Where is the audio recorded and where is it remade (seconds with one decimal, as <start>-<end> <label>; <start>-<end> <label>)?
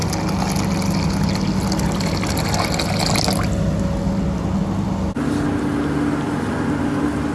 0.0-7.3 recorded